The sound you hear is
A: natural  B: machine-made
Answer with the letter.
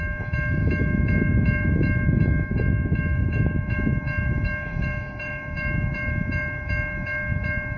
B